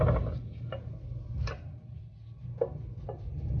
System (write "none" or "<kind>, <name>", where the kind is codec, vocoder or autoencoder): none